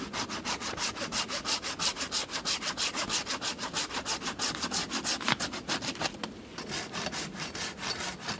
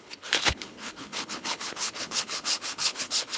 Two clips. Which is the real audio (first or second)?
first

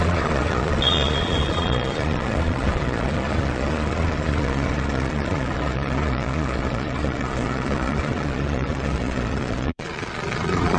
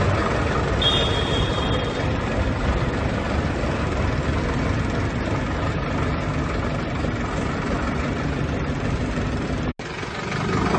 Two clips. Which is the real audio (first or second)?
second